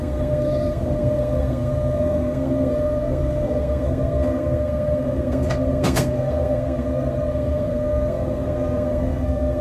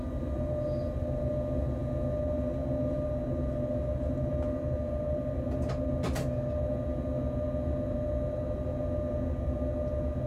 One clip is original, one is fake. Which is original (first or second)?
second